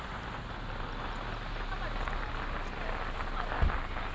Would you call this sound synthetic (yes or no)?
no